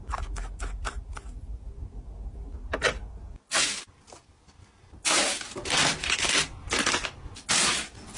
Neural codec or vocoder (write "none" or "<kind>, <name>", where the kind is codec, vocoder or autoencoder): none